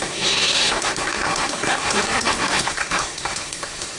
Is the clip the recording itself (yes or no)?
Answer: no